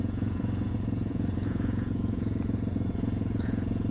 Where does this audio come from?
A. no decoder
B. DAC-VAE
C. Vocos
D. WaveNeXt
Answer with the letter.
C